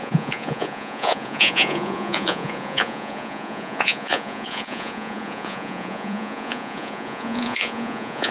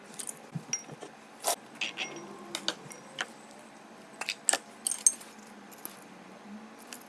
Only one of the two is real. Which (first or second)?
second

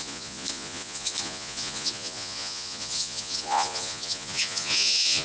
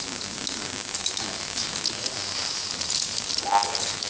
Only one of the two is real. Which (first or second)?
second